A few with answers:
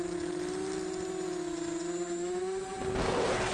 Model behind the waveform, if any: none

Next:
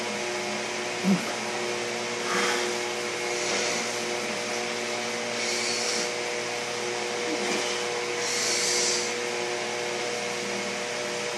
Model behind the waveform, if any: none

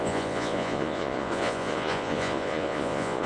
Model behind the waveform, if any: vocoder, Vocos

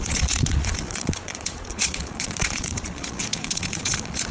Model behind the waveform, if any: vocoder, Vocos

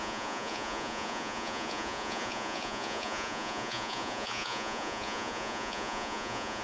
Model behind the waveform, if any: vocoder, Vocos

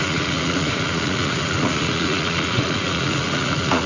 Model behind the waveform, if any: vocoder, Vocos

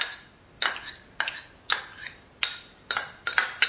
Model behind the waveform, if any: none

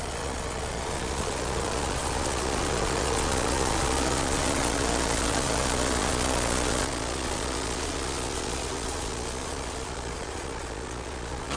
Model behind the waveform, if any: vocoder, Vocos